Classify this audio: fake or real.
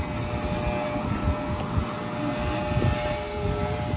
real